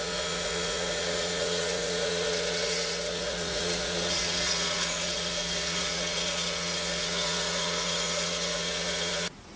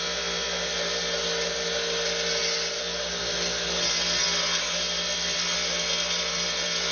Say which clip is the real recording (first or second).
second